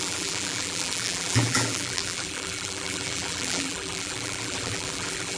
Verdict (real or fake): fake